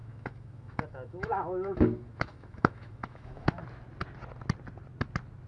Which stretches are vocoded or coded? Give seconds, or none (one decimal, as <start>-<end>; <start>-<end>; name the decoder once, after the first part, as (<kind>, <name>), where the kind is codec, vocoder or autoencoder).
0.0-3.6 (autoencoder, DAC-VAE)